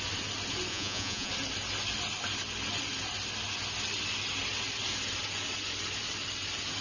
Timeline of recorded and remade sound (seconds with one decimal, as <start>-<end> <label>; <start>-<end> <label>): 0.0-0.7 recorded; 0.7-1.3 remade; 1.3-6.8 recorded